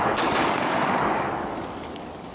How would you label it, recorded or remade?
remade